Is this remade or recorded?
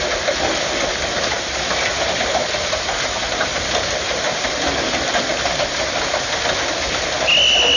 recorded